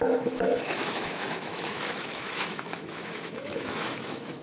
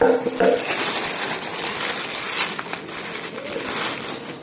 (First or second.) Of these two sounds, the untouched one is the second